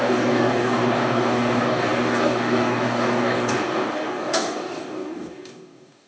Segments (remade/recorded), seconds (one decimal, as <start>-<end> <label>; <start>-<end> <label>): 0.0-6.1 remade